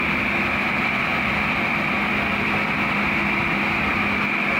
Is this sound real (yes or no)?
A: yes